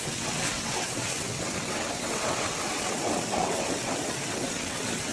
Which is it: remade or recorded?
remade